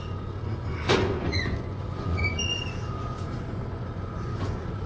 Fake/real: fake